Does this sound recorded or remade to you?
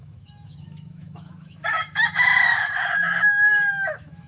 remade